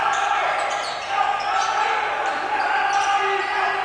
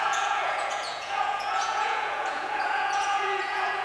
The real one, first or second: first